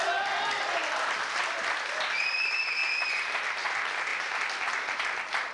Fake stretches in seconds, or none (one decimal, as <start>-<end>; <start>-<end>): none